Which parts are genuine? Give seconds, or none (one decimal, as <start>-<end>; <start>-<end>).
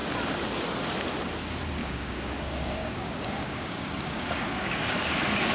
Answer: 0.0-1.8; 5.1-5.5